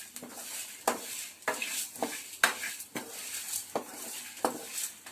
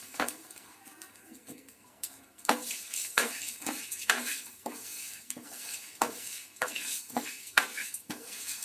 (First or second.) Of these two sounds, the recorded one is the first